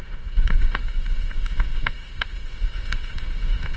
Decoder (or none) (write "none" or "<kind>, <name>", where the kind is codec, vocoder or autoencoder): autoencoder, DAC-VAE